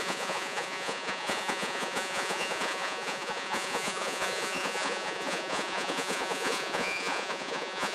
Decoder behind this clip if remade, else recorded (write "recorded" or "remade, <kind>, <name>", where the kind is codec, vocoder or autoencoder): remade, vocoder, Vocos